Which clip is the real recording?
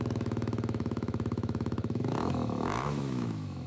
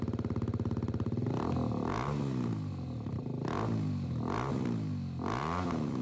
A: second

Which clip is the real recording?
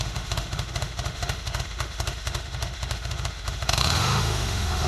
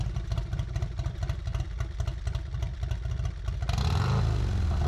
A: second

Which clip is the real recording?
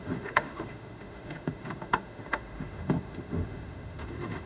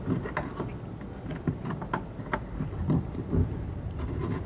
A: second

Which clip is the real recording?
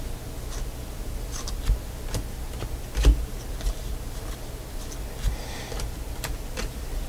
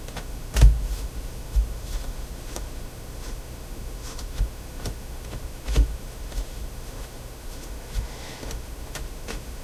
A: first